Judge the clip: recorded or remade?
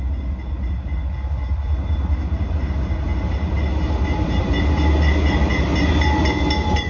recorded